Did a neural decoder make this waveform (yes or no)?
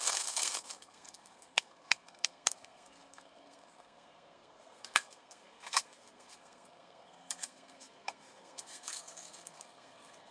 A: yes